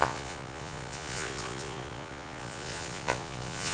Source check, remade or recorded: remade